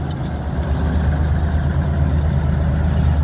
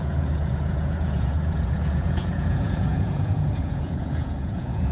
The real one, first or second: first